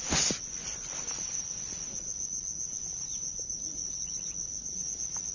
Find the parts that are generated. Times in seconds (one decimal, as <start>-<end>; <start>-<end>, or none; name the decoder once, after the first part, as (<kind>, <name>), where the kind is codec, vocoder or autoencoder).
none